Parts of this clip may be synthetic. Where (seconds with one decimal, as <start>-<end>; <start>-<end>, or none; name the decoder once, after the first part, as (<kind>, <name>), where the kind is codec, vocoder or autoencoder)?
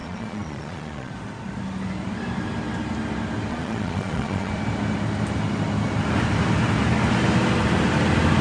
0.0-1.1 (vocoder, Vocos); 3.5-4.5